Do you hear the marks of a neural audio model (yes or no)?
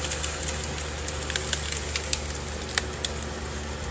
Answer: no